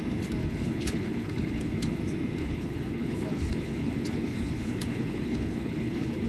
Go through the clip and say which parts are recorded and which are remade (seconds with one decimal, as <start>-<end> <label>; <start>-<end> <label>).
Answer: 0.0-0.4 recorded; 0.4-2.0 remade; 2.0-2.4 recorded; 2.4-6.3 remade

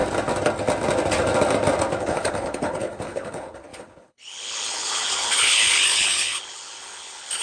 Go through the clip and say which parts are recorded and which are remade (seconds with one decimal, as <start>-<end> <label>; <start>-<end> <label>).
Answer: 0.0-2.0 recorded; 2.0-7.4 remade

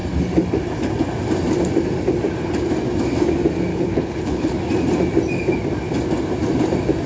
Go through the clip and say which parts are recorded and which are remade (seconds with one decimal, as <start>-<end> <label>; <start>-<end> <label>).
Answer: 0.0-3.7 recorded; 3.7-4.6 remade; 4.6-7.1 recorded

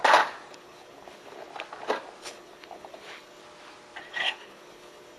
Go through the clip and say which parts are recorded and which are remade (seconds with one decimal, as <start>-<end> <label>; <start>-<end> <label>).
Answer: 0.0-0.5 recorded; 0.5-1.5 remade; 1.5-2.2 recorded; 2.2-3.4 remade; 3.4-4.0 recorded; 4.0-5.2 remade